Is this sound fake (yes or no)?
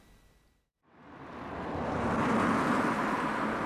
no